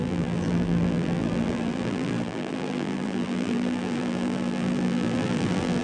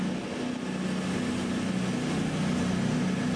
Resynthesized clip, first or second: first